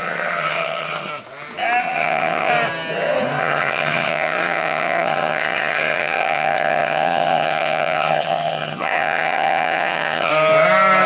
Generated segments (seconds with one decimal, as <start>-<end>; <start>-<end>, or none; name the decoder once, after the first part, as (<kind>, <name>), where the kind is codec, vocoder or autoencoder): 0.0-1.1 (vocoder, HiFi-GAN); 1.8-2.5; 3.4-10.3